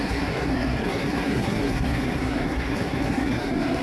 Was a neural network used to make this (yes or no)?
yes